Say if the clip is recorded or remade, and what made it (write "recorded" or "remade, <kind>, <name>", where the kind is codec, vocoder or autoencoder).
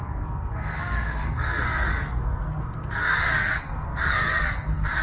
remade, codec, SNAC